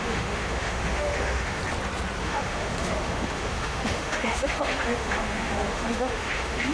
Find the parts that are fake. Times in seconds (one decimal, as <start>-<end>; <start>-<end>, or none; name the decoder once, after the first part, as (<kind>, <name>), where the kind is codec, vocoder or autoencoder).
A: 0.0-1.6 (autoencoder, DAC-VAE); 2.2-6.7

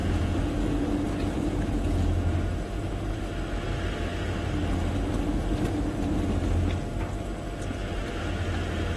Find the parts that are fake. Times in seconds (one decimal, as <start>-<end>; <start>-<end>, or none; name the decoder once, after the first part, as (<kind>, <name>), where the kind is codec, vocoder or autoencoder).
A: 0.0-3.2 (vocoder, Vocos)

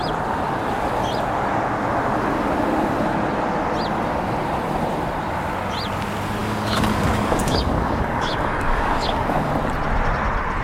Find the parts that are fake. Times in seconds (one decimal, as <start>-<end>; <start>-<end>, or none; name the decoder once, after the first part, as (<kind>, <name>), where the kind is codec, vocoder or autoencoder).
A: 6.4-9.5 (codec, DAC)

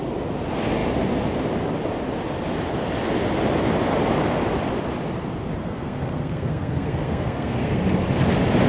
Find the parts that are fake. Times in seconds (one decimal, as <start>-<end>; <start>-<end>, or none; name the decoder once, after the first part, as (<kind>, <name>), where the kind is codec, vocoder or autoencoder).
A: 5.6-7.8 (codec, SNAC)

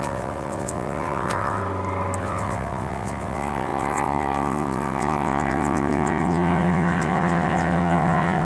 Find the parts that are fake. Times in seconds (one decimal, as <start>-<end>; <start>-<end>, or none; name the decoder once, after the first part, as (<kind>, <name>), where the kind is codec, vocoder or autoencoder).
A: 0.0-1.6 (vocoder, WaveNeXt); 2.2-8.4

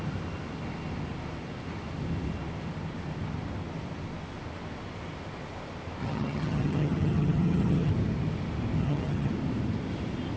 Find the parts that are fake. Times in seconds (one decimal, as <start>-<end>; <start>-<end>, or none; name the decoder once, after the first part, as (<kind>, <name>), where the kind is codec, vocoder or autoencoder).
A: 6.0-7.9 (vocoder, HiFi-GAN); 8.8-9.3

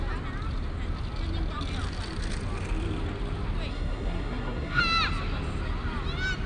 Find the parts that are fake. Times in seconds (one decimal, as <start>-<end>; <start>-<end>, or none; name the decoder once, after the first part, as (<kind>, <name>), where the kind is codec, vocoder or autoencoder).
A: 3.7-4.8 (codec, SNAC)